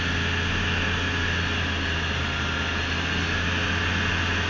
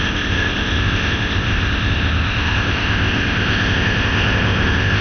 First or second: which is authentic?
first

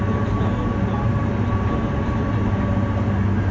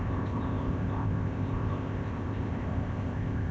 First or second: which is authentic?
first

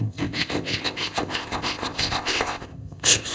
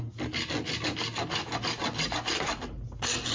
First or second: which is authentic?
second